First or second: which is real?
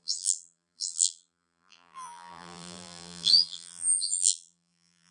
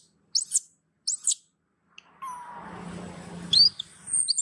second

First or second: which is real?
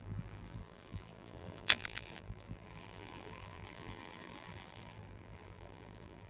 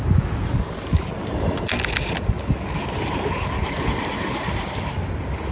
second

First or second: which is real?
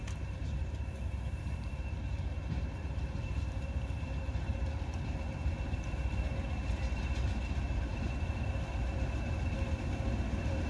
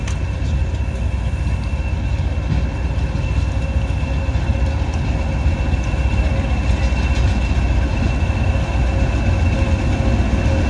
second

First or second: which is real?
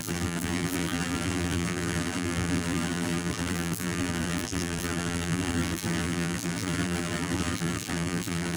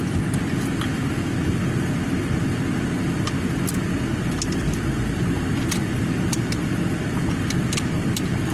second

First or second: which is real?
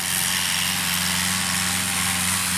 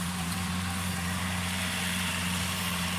first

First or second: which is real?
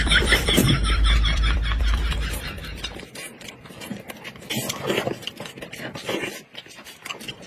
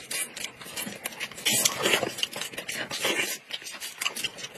second